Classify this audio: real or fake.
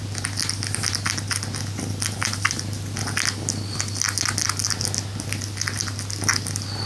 real